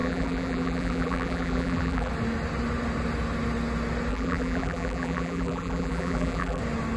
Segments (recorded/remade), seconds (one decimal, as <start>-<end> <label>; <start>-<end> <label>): 0.0-2.1 remade; 2.1-4.1 recorded; 4.1-6.6 remade; 6.6-7.0 recorded